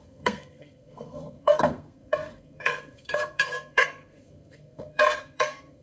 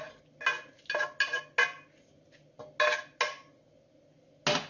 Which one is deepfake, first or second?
first